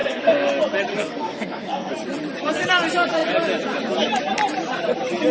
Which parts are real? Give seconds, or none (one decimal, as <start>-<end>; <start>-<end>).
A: 0.5-0.9; 1.9-5.3